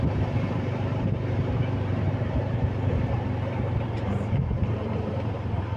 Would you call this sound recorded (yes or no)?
no